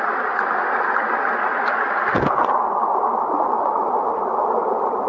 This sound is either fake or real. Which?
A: real